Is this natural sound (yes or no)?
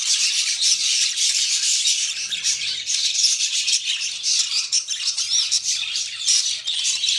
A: no